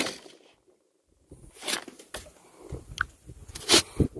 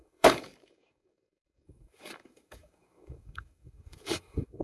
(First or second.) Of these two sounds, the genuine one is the first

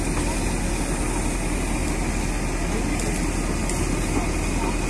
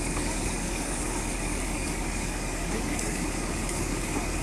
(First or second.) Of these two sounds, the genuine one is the first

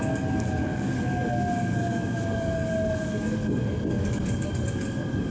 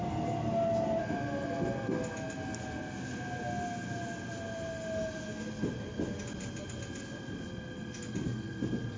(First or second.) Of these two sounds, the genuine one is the second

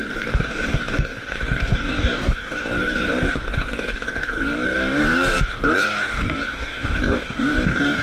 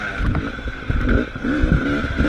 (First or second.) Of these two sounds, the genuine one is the second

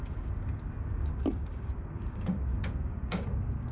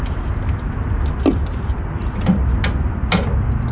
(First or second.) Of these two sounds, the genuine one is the second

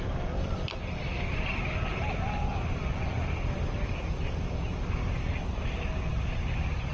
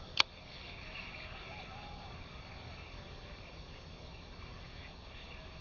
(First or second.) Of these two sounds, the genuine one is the first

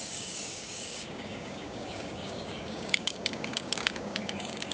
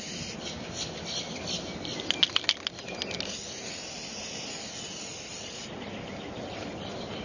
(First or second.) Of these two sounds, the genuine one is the second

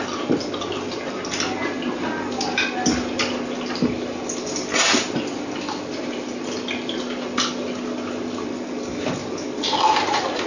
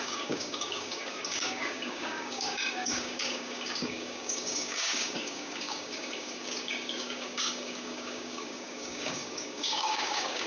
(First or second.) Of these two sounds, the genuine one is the first